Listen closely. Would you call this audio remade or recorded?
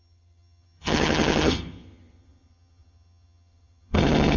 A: remade